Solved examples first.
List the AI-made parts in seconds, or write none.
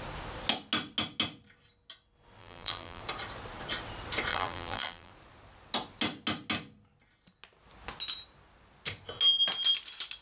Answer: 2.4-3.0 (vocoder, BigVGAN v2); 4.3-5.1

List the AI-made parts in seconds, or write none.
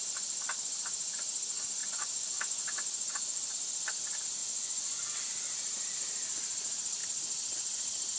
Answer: 1.8-3.5 (vocoder, Vocos); 4.4-5.0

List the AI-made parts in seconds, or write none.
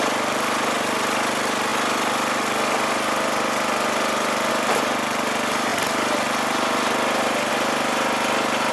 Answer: none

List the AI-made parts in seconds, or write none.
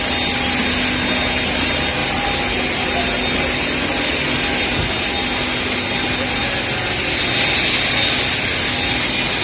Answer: none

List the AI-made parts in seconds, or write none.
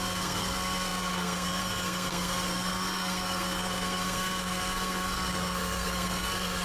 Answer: 0.0-6.6 (codec, SNAC)